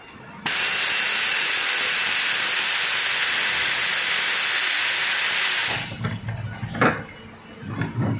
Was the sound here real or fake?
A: real